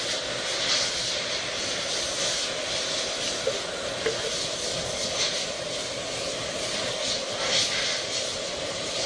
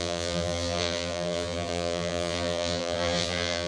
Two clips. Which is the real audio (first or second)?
first